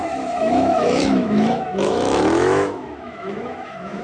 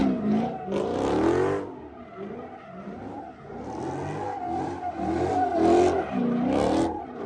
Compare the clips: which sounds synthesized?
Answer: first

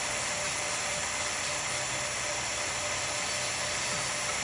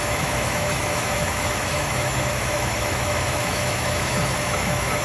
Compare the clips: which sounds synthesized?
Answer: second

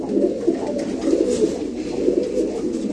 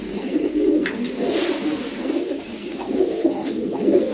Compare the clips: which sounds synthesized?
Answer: second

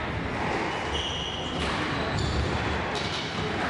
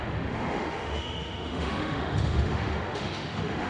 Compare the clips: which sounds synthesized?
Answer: second